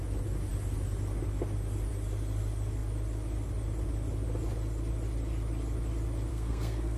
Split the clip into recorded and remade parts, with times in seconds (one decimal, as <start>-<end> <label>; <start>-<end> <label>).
0.0-6.3 recorded; 6.3-7.0 remade